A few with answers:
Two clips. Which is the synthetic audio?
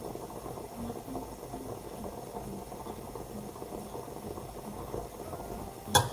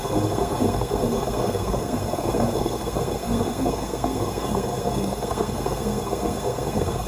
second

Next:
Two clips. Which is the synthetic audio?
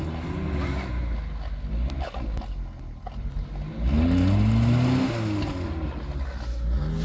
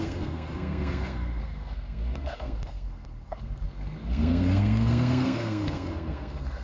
second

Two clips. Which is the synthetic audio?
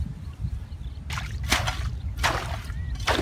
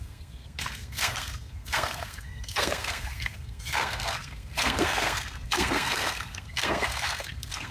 second